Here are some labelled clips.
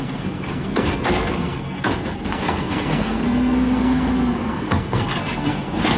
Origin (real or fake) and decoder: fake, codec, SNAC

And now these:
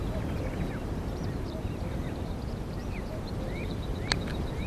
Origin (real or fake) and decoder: fake, vocoder, BigVGAN v2